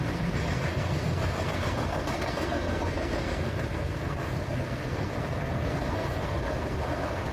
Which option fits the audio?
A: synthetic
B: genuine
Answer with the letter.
A